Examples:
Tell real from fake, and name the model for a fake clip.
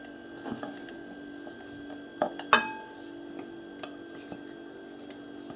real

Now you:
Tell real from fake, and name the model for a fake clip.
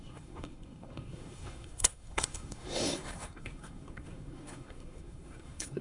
fake, codec, SNAC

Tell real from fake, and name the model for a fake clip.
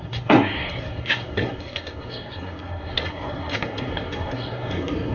fake, codec, SNAC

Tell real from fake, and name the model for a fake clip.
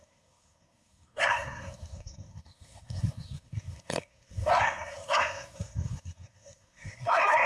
fake, codec, SNAC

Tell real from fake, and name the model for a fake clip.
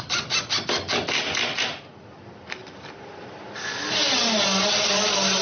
real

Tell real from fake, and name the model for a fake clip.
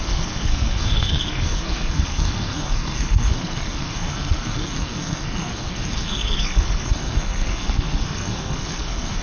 fake, codec, SNAC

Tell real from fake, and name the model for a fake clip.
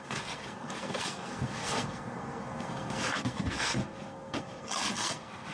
fake, codec, SNAC